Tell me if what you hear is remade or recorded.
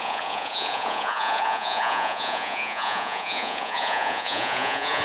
remade